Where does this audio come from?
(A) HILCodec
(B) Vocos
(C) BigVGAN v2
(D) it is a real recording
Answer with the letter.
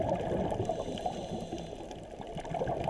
D